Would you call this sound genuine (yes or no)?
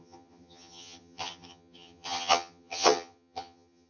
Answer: no